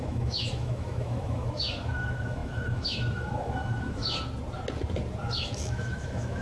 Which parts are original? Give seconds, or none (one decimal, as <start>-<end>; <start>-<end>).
4.0-5.4